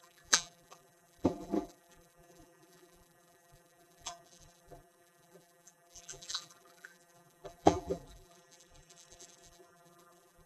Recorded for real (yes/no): no